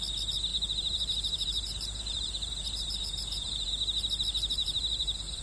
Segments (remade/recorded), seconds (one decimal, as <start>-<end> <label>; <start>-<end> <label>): 0.0-0.5 recorded; 0.5-3.7 remade; 3.7-4.6 recorded; 4.6-5.4 remade